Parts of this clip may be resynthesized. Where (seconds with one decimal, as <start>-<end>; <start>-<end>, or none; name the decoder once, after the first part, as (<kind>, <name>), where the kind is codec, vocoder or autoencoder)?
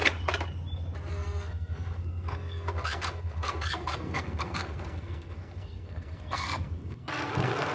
1.1-7.7 (codec, SNAC)